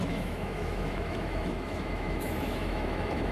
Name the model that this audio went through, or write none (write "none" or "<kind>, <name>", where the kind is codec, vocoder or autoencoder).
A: autoencoder, DAC-VAE